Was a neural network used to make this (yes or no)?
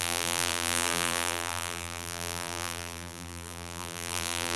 yes